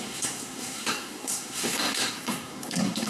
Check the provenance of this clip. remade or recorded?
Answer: remade